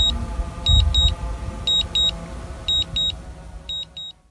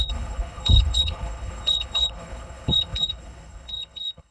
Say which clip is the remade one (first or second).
second